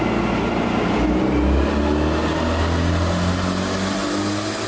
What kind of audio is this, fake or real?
real